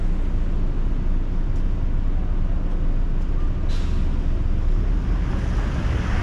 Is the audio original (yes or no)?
yes